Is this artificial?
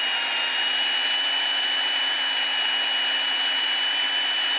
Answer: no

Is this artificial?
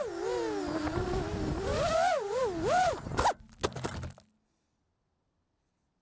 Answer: no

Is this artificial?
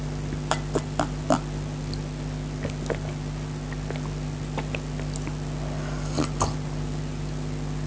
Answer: no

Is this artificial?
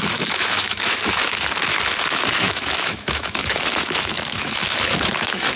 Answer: yes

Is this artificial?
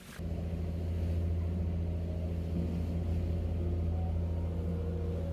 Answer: no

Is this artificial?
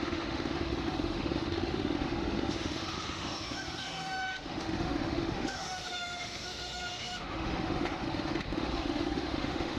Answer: yes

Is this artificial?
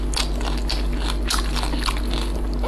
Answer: no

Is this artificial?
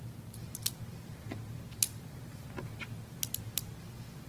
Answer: no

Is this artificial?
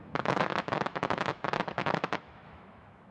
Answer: yes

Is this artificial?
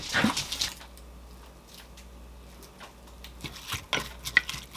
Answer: no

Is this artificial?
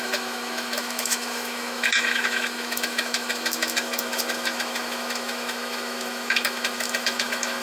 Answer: yes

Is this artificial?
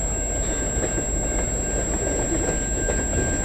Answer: no